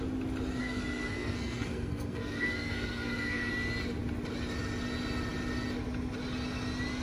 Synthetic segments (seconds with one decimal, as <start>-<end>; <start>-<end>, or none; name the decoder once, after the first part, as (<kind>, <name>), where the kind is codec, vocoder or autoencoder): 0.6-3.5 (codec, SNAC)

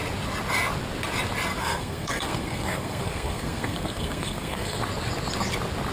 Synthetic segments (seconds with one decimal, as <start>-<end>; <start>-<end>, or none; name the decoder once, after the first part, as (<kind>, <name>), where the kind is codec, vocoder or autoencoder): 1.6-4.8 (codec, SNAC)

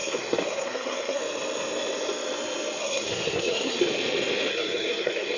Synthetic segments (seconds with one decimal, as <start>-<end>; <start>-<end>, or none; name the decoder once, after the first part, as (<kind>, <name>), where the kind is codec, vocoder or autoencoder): 0.0-1.2 (codec, SNAC); 2.8-3.8; 4.5-5.4

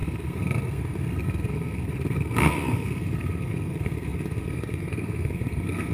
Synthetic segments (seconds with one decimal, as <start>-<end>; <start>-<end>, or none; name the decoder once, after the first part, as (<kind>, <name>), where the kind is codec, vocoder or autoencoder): 0.0-5.9 (codec, SNAC)

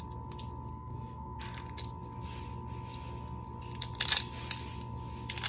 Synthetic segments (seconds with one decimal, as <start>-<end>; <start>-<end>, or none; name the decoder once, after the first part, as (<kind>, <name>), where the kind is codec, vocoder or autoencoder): 0.7-1.4 (codec, SNAC)

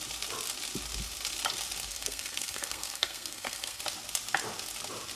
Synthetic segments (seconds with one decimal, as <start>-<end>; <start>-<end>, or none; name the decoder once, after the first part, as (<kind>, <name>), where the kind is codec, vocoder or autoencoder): 1.9-3.8 (codec, SNAC)

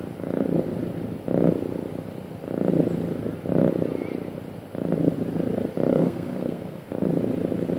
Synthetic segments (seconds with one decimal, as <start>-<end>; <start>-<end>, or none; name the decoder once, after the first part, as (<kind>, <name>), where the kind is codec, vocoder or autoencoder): 5.9-6.9 (codec, SNAC)

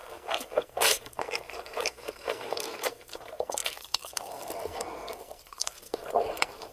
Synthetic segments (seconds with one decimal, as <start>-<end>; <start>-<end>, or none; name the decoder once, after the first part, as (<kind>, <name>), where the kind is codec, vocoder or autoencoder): 0.0-6.7 (codec, SNAC)